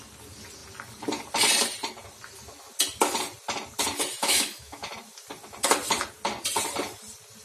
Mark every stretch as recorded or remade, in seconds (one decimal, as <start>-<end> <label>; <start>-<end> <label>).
0.0-4.2 recorded; 4.2-4.9 remade; 4.9-7.4 recorded